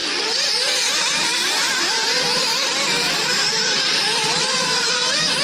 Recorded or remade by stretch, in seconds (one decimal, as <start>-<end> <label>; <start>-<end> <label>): 0.0-5.4 remade